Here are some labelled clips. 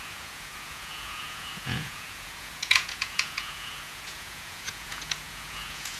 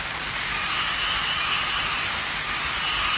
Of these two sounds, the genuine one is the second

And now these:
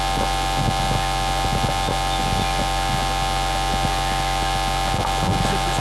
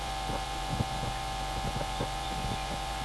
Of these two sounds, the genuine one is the first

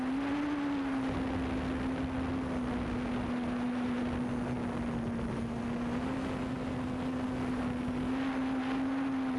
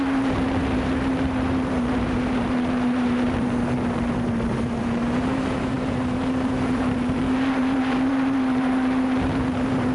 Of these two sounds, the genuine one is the first